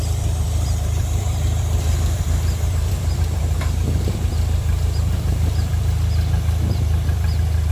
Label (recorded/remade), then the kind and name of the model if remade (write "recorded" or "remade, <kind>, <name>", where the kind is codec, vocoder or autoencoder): remade, vocoder, BigVGAN v2